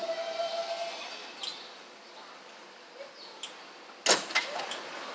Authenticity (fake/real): real